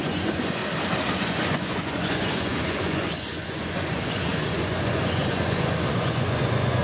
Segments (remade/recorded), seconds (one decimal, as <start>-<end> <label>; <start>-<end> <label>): 0.0-0.6 remade; 0.6-1.1 recorded; 1.1-6.8 remade